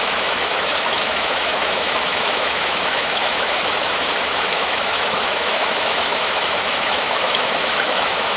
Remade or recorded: remade